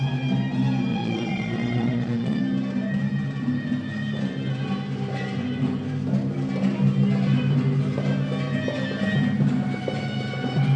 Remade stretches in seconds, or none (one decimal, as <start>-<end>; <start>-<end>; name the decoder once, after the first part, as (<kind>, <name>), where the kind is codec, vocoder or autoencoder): 0.9-2.4 (vocoder, Vocos)